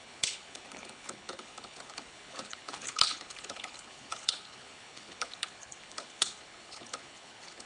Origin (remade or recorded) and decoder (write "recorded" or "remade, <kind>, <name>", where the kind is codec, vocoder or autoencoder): remade, codec, HILCodec